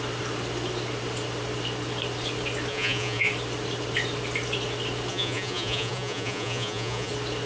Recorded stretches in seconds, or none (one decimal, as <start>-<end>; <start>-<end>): 0.0-2.7; 3.3-5.1; 7.1-7.5